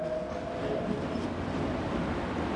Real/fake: real